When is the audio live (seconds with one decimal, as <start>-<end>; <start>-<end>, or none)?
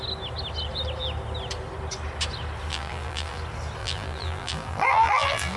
0.0-2.7; 3.4-3.8